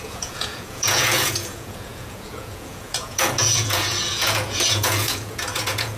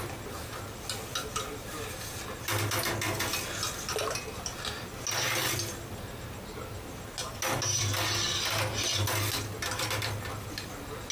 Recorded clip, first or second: second